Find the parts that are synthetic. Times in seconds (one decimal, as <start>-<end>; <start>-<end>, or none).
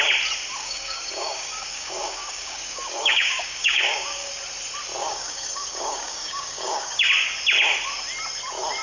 0.6-4.3; 5.0-7.1